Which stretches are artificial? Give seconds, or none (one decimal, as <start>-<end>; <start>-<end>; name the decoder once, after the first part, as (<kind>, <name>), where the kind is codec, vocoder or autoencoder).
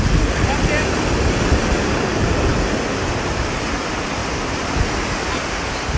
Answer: 4.2-5.3 (vocoder, BigVGAN v2)